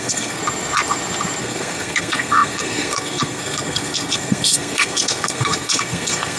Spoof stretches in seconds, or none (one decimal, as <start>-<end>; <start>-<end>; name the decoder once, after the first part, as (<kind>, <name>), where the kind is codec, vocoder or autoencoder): 0.0-0.4 (codec, SNAC); 1.4-6.4